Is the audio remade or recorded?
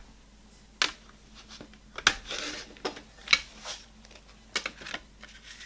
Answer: recorded